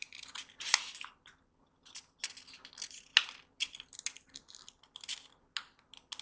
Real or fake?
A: real